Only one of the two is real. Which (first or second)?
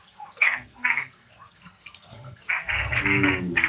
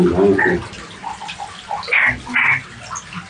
second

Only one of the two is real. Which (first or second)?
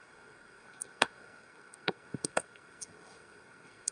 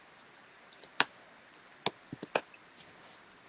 second